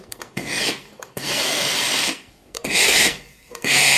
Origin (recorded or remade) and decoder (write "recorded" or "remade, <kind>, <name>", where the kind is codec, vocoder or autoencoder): remade, codec, SNAC